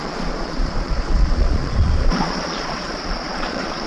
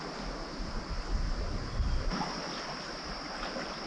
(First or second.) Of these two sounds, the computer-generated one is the first